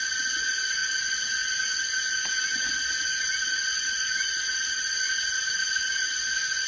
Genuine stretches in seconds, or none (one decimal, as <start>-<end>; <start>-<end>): 0.0-3.1; 6.2-6.7